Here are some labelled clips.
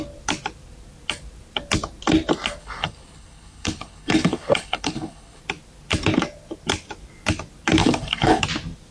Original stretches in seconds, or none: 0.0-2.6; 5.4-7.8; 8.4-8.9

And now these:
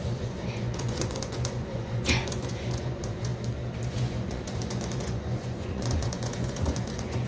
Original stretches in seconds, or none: 3.3-3.9

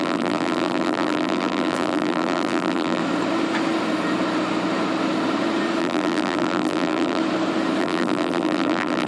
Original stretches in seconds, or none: 3.0-5.8; 7.2-7.8

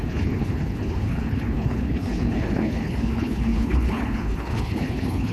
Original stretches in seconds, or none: none

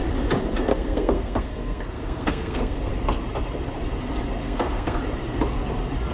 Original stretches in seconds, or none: 0.0-0.7; 2.9-4.4; 5.0-6.1